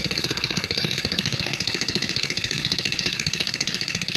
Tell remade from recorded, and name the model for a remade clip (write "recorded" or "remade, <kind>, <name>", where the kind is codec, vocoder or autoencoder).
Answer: remade, codec, SNAC